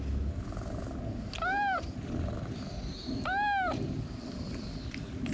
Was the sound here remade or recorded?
recorded